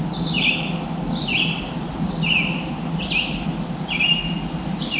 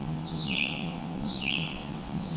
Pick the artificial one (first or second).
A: second